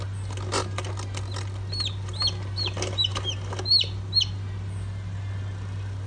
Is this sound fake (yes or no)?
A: no